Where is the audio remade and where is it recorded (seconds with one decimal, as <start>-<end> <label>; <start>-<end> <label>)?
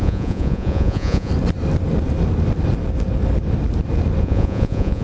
0.0-1.3 remade; 1.3-4.2 recorded; 4.2-5.0 remade